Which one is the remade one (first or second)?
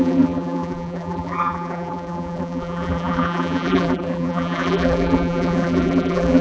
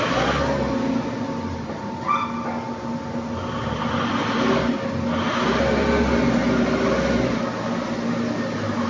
first